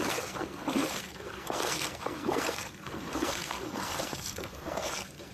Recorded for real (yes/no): no